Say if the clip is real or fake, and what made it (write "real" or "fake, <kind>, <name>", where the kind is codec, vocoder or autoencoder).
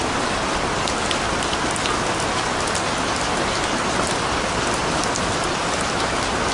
real